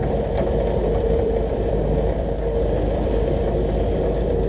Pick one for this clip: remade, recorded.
remade